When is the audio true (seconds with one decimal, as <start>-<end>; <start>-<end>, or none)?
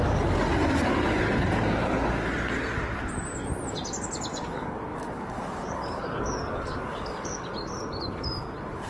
0.0-4.3; 7.5-8.9